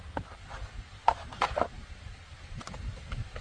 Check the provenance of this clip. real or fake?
fake